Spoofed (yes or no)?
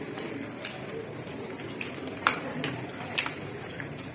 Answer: yes